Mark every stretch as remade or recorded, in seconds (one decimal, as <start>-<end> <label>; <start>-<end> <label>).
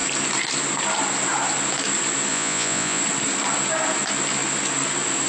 0.0-2.3 recorded; 2.3-3.0 remade; 3.0-5.3 recorded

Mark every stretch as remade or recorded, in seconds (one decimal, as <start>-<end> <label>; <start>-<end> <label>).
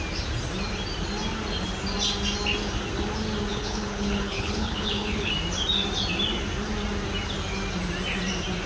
0.0-3.5 recorded; 3.5-5.3 remade; 5.3-8.7 recorded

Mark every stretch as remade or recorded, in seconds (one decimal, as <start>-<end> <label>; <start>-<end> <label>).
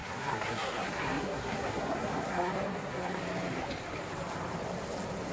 0.0-3.2 remade; 3.2-5.3 recorded